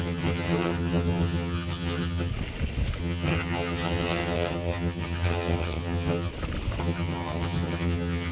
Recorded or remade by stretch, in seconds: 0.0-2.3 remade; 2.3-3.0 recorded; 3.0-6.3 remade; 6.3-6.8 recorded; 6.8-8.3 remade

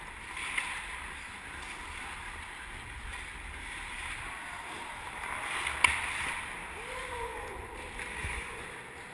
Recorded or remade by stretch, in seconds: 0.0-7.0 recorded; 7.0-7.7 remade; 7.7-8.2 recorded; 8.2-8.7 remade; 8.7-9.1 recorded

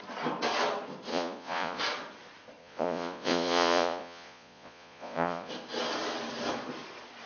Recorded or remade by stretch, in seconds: 0.0-1.1 recorded; 1.1-1.8 remade; 1.8-2.6 recorded; 2.6-5.5 remade; 5.5-7.3 recorded

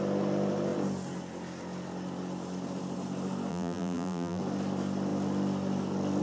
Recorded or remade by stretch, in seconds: 0.0-3.5 recorded; 3.5-4.4 remade; 4.4-6.2 recorded

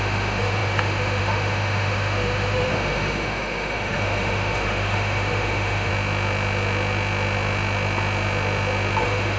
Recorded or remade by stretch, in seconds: 0.0-5.9 remade; 5.9-9.0 recorded; 9.0-9.4 remade

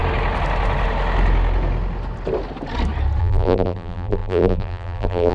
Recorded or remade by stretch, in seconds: 0.0-3.2 recorded; 3.2-5.3 remade

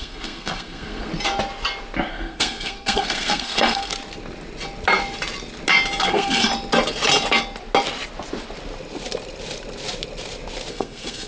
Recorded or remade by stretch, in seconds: 0.0-1.1 remade; 1.1-2.1 recorded; 2.1-3.9 remade; 3.9-6.0 recorded; 6.0-6.5 remade; 6.5-10.7 recorded; 10.7-11.3 remade

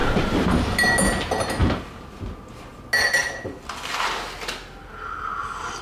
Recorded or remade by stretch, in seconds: 0.0-5.8 recorded